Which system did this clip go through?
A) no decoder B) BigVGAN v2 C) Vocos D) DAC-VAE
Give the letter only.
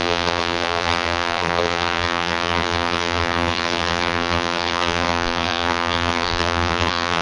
B